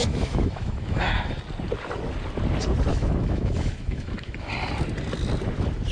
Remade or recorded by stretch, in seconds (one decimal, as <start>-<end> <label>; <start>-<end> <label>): 0.0-1.4 remade; 1.4-2.9 recorded; 2.9-4.5 remade; 4.5-5.9 recorded